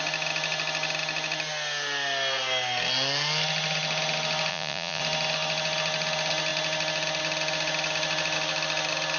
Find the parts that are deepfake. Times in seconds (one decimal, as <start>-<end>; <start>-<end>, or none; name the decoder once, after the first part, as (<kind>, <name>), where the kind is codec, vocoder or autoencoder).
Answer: 4.5-5.0 (vocoder, Vocos)